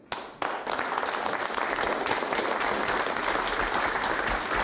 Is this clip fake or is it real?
real